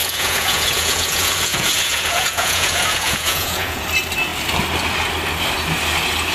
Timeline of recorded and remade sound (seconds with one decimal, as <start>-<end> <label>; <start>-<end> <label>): 0.0-3.8 remade; 3.8-6.3 recorded